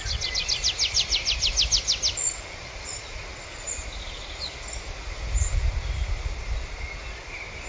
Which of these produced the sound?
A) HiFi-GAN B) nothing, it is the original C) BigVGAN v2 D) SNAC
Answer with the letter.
B